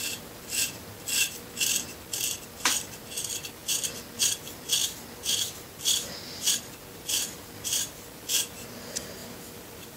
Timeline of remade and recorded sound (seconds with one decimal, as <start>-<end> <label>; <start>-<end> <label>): 0.0-10.0 recorded